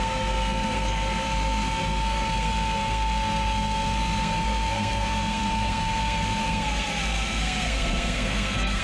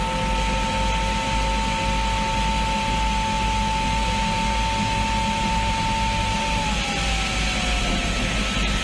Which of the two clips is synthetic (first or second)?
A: first